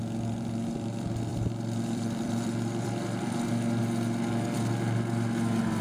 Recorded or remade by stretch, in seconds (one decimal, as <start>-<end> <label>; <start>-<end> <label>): 0.0-1.3 recorded; 1.3-3.8 remade; 3.8-5.8 recorded